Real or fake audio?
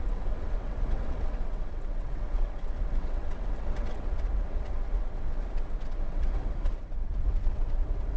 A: fake